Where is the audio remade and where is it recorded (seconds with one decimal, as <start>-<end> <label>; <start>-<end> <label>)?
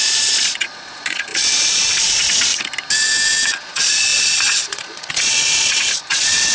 0.0-2.5 remade; 2.5-3.5 recorded; 3.5-6.5 remade